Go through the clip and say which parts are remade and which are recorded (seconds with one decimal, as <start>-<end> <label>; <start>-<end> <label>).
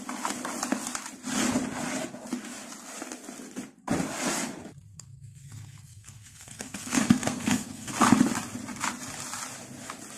0.0-4.9 recorded; 4.9-7.9 remade; 7.9-10.2 recorded